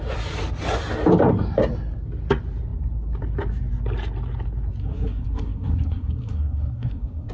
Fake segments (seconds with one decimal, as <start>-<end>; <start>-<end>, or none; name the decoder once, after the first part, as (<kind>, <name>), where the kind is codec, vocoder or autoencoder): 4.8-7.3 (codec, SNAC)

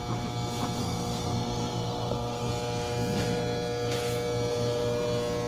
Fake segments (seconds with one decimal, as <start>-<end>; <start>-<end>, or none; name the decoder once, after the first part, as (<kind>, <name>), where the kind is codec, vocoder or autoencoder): 0.8-2.5 (codec, SNAC)

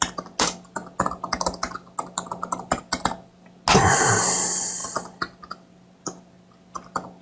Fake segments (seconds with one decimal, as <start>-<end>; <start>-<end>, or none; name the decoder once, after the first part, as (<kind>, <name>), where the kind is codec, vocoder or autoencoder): none

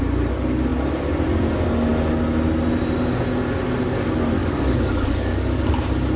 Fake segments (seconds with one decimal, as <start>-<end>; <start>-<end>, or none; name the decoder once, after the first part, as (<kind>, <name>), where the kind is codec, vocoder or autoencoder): 4.4-5.6 (codec, DAC)

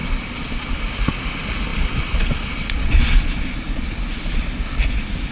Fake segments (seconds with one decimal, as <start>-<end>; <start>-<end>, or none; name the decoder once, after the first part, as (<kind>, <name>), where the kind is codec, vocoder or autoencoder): 0.0-0.8 (vocoder, Vocos); 1.7-4.6

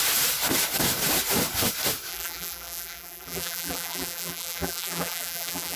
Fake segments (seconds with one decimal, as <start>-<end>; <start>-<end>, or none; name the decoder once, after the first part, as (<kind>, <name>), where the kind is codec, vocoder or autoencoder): 2.1-5.8 (vocoder, BigVGAN v2)

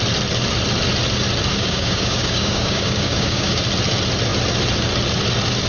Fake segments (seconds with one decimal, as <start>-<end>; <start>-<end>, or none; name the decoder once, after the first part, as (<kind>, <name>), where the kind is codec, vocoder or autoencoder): 1.5-3.6 (codec, DAC)

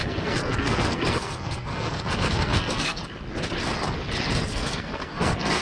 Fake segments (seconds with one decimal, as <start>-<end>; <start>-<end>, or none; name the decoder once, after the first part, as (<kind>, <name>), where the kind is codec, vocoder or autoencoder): 0.0-3.0 (codec, SNAC); 4.5-5.6